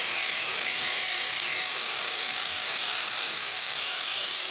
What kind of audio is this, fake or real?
fake